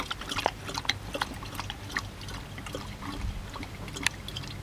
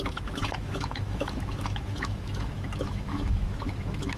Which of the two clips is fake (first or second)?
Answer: second